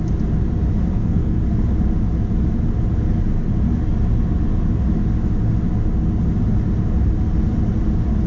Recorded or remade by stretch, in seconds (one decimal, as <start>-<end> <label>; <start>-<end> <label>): 0.0-0.9 recorded; 0.9-1.4 remade; 1.4-8.3 recorded